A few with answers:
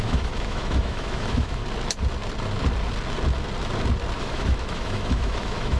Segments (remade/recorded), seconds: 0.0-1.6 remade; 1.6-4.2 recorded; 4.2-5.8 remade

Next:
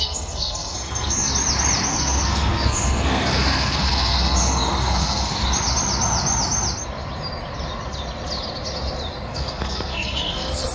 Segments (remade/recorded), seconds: 0.0-1.3 remade; 1.3-1.9 recorded; 1.9-5.3 remade; 5.3-9.3 recorded; 9.3-10.7 remade

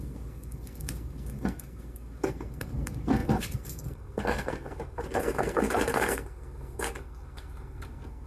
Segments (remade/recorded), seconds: 0.0-8.3 remade

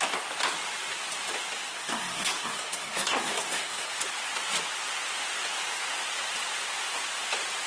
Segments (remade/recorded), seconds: 0.0-1.7 recorded; 1.7-3.9 remade; 3.9-7.7 recorded

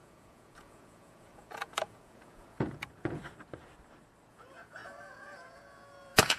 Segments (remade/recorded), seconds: 0.0-3.2 remade; 3.2-4.3 recorded; 4.3-6.4 remade

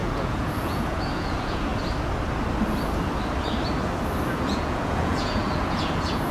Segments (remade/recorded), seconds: 0.0-1.7 remade; 1.7-4.3 recorded; 4.3-6.3 remade